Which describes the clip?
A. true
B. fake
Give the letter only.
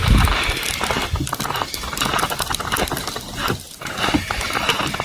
A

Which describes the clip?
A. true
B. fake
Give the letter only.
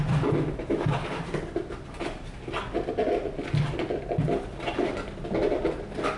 A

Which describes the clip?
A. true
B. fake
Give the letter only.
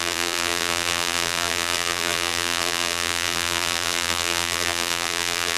B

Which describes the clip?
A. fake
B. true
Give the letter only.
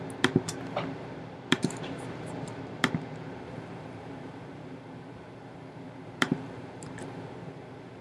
A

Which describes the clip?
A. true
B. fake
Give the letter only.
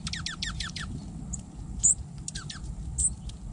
A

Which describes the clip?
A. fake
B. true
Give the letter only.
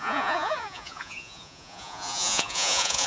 A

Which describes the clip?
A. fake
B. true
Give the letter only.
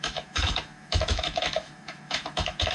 A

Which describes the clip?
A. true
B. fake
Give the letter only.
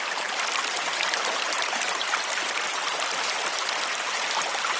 B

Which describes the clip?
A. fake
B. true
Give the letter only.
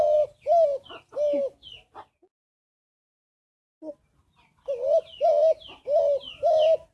B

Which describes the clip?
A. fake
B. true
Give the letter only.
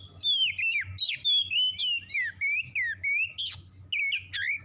B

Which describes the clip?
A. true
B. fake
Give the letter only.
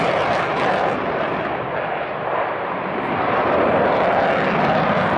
A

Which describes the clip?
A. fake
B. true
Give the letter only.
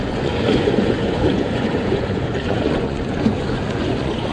A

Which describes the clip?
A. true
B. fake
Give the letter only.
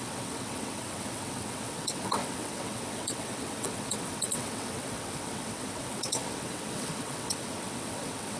B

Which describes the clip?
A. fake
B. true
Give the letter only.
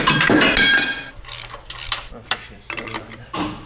A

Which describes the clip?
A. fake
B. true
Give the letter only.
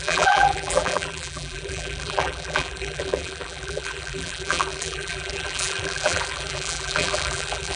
A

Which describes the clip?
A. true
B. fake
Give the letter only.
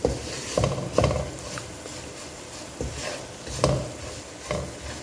A